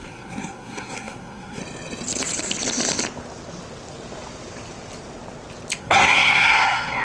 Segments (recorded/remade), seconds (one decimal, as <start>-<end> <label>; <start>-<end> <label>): 0.0-1.6 remade; 1.6-5.8 recorded; 5.8-7.0 remade